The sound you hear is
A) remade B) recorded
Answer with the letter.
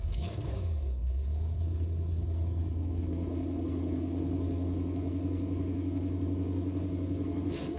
A